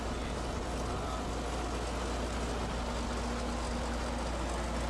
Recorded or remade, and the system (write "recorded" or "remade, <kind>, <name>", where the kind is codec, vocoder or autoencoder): recorded